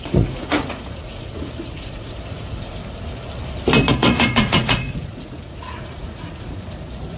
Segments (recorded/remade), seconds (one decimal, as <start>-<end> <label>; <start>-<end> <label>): 0.0-2.8 remade; 2.8-3.9 recorded; 3.9-7.2 remade